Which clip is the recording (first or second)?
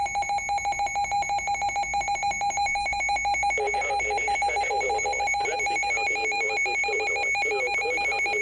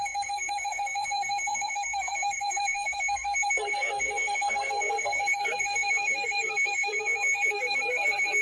first